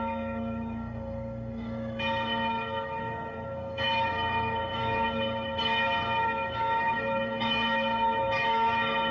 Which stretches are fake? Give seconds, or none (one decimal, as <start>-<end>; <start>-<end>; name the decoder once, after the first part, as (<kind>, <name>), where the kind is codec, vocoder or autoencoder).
0.0-9.1 (codec, DAC)